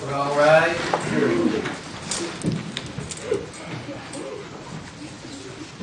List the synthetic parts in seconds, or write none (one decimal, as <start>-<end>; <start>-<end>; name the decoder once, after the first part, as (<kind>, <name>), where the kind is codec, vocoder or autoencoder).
3.9-4.5 (vocoder, Vocos)